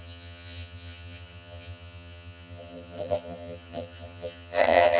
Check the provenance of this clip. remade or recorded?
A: remade